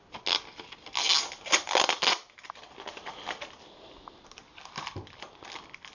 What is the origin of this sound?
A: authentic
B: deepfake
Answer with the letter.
A